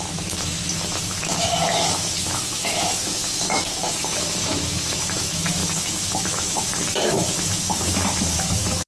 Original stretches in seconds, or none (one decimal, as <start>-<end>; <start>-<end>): none